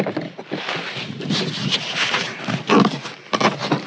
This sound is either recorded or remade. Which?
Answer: recorded